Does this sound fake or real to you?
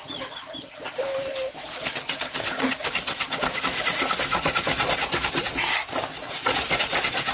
real